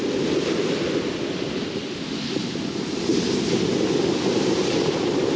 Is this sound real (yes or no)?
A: yes